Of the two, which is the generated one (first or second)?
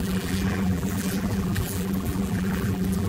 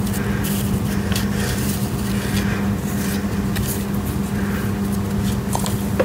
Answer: first